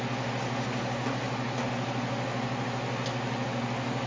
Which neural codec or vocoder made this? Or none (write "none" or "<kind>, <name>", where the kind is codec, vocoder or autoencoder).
none